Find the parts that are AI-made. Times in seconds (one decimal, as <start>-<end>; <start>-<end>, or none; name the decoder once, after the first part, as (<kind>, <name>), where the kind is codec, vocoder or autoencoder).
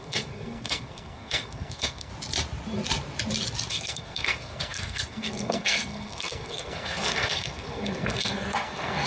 0.0-2.1 (codec, SNAC); 3.7-9.1